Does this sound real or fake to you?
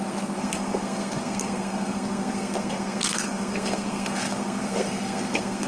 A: fake